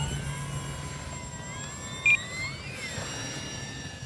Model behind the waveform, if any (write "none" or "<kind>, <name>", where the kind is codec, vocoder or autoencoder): none